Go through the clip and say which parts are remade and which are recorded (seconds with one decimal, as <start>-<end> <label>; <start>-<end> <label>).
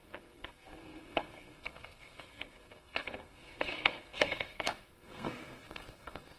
0.0-6.4 remade